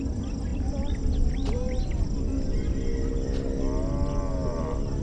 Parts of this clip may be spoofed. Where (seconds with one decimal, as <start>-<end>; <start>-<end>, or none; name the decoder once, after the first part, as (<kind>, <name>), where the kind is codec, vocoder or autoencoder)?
none